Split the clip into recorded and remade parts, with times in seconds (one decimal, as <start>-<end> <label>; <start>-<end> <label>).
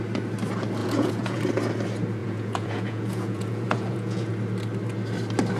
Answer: 0.0-0.8 recorded; 0.8-1.4 remade; 1.4-2.2 recorded; 2.2-4.3 remade; 4.3-5.6 recorded